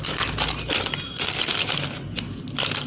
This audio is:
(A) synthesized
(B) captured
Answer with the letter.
B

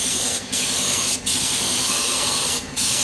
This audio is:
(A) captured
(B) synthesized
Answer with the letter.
B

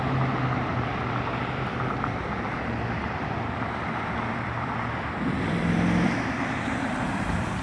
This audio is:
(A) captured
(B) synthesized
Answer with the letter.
B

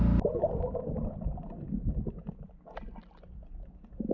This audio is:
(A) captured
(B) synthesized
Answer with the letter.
A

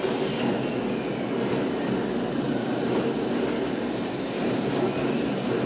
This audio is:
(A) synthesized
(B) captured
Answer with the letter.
B